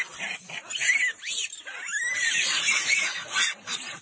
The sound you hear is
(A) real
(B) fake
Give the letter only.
A